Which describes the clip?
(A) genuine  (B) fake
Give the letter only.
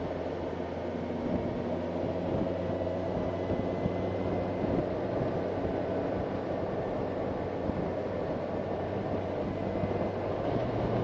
A